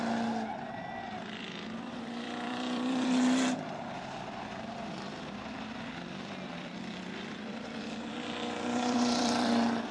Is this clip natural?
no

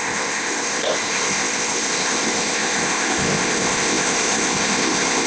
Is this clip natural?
no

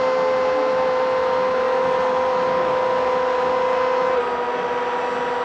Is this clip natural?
yes